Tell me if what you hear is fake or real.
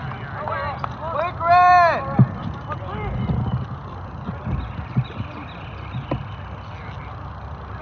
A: real